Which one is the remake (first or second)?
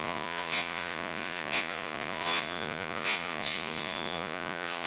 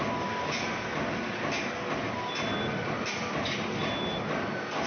first